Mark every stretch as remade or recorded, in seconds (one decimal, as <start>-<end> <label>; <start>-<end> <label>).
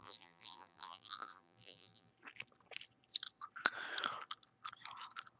0.0-2.1 remade; 2.1-5.4 recorded